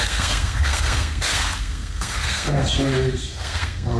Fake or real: fake